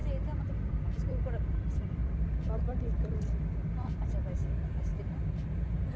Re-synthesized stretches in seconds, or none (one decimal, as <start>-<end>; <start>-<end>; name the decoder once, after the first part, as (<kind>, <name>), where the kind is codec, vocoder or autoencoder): 0.5-6.0 (vocoder, BigVGAN v2)